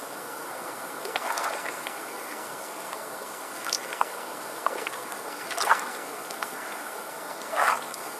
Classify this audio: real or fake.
fake